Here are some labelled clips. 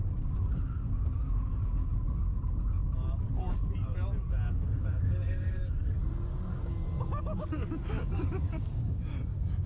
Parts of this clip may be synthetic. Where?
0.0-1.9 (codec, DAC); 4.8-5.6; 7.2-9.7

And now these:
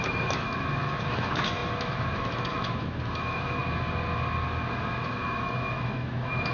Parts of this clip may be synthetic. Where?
0.0-3.6 (autoencoder, DAC-VAE); 4.7-6.5